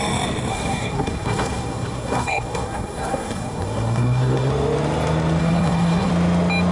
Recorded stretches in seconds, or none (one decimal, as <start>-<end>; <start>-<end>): 0.0-0.5; 4.5-5.4; 6.1-6.7